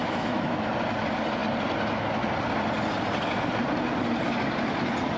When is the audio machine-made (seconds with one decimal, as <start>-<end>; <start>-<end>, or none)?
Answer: 0.0-0.7